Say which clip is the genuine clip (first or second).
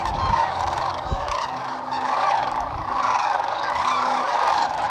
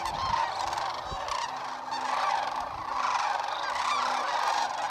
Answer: second